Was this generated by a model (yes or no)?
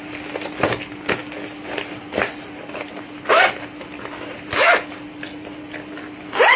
no